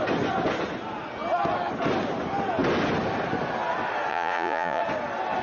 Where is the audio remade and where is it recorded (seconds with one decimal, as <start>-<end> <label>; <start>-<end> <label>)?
0.0-4.1 recorded; 4.1-4.8 remade; 4.8-5.4 recorded